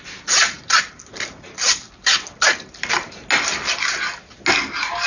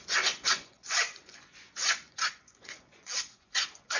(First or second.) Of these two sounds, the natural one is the first